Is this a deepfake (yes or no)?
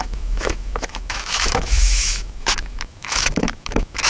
yes